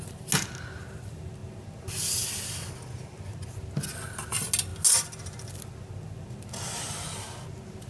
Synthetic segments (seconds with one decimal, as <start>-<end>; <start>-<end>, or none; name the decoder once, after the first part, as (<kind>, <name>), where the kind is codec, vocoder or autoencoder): none